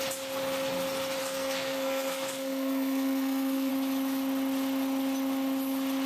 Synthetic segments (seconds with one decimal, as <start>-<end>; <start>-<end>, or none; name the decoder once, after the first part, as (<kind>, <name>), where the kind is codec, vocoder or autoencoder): 1.2-3.7 (codec, SNAC)